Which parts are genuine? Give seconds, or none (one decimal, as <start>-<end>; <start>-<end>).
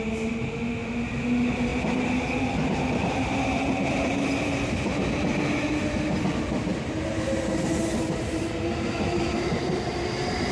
0.0-10.5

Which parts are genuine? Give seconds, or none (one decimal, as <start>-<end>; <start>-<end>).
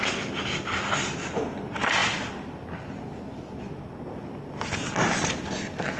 0.0-6.0